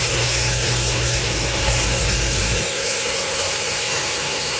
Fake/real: fake